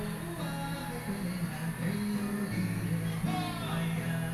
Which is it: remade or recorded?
recorded